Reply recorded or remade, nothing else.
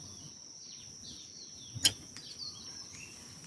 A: recorded